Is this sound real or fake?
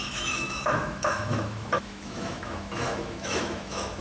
fake